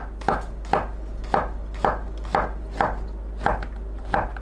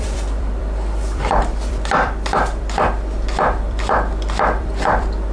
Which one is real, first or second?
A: first